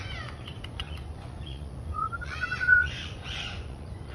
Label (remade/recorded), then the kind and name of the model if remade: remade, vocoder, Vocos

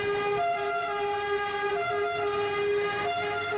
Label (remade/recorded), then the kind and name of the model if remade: recorded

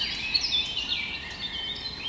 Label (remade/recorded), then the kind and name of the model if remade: recorded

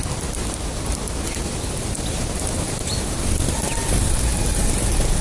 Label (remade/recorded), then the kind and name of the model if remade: recorded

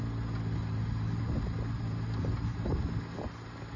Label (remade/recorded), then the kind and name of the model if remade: recorded